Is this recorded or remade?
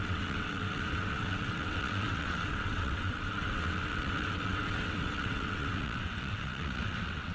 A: remade